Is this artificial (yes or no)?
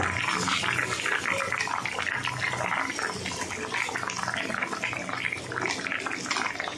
no